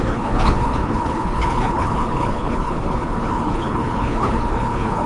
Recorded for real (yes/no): no